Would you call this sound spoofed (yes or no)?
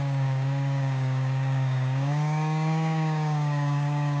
yes